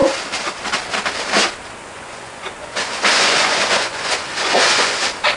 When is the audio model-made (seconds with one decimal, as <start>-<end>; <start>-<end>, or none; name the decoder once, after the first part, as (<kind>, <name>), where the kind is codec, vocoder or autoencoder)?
1.8-5.0 (vocoder, Vocos)